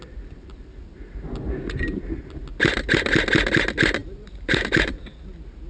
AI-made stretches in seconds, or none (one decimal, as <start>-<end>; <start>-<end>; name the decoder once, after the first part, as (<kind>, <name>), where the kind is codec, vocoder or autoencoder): 4.0-5.0 (vocoder, BigVGAN v2)